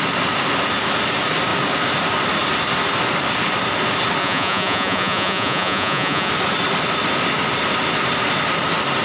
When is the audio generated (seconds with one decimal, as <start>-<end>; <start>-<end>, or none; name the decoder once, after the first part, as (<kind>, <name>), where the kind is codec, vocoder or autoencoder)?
4.2-6.3 (vocoder, Vocos)